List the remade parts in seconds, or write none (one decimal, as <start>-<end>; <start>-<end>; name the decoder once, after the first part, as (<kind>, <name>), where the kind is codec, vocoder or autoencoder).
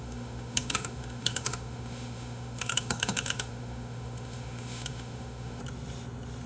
0.0-5.6 (autoencoder, DAC-VAE)